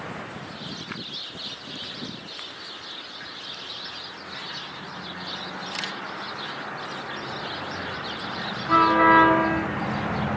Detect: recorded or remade recorded